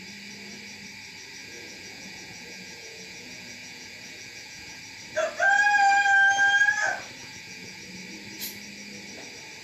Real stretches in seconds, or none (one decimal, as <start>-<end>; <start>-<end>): 0.0-1.4; 4.8-7.2; 7.8-9.6

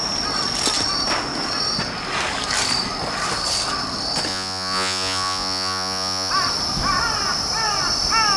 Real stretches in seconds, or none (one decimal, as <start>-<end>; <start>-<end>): 0.0-4.3; 6.3-8.4

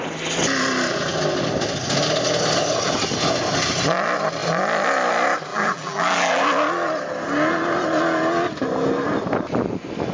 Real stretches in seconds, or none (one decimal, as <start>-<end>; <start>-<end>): 0.0-5.5; 6.4-10.1